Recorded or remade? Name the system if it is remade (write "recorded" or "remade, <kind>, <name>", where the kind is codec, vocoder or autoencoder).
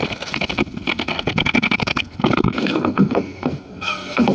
remade, codec, SNAC